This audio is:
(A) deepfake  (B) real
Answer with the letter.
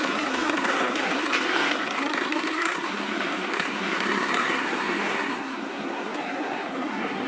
A